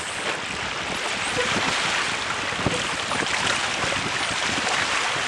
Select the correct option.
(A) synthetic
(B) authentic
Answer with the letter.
B